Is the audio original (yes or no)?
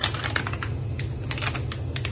yes